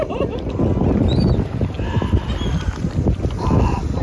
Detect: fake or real real